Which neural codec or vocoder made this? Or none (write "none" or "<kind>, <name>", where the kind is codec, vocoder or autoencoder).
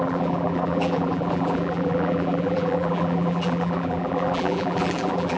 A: vocoder, BigVGAN v2